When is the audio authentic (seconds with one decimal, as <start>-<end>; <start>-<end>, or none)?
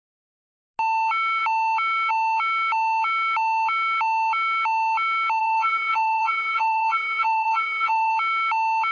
0.0-5.4; 8.1-8.9